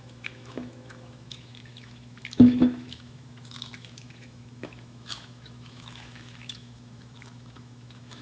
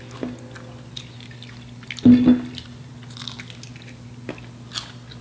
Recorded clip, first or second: second